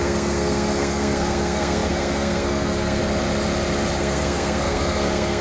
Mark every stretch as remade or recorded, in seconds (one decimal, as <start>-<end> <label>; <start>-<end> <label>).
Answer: 0.0-3.0 remade; 3.0-4.0 recorded; 4.0-5.4 remade